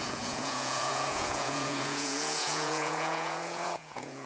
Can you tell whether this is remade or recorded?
remade